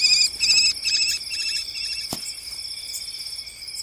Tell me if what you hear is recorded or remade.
recorded